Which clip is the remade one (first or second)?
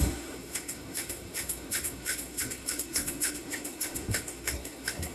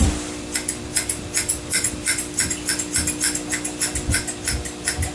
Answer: first